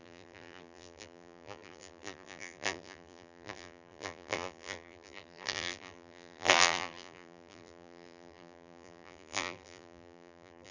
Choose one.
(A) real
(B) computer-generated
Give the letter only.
B